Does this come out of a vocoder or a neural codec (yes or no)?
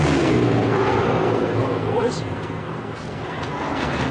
yes